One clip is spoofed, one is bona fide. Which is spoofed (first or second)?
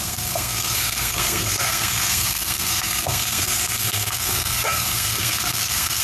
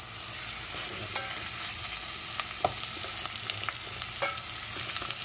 first